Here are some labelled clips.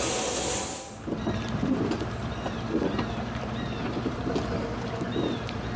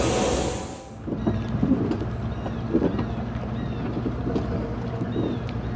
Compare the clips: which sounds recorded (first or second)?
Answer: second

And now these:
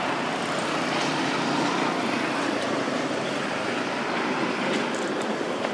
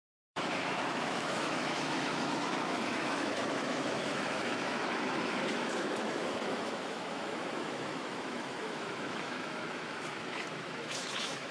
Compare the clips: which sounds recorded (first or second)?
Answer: first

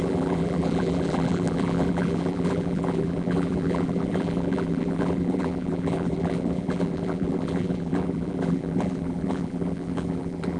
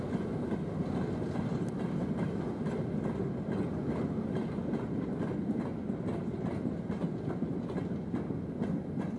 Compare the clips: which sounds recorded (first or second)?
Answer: second